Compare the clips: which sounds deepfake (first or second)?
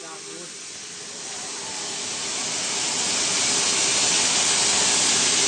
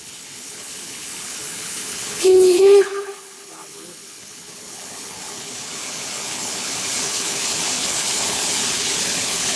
second